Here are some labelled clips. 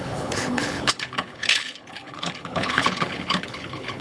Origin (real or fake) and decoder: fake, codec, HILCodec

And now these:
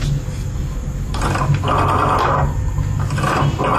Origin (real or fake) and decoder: real